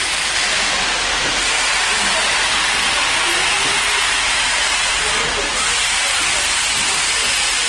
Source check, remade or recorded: remade